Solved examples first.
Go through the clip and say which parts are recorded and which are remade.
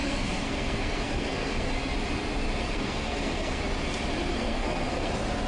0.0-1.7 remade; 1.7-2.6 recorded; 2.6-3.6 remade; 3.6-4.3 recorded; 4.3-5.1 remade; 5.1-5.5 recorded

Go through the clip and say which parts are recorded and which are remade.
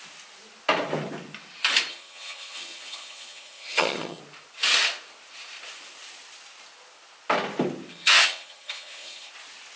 0.0-1.9 recorded; 1.9-4.2 remade; 4.2-7.9 recorded; 7.9-9.3 remade; 9.3-9.8 recorded